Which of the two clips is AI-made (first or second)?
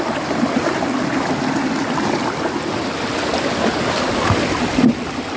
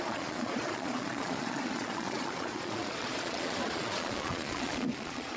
second